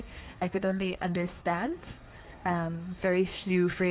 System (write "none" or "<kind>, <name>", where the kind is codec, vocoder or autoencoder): codec, SNAC